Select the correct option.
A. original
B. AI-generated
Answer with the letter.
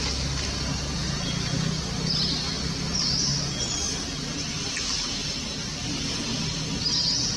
A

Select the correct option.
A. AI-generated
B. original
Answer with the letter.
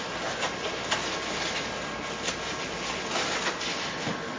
B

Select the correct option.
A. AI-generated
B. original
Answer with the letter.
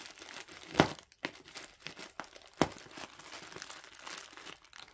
B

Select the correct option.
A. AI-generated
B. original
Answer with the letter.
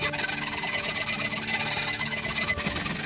B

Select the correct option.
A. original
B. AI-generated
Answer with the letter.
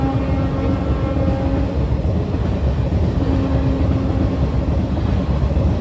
A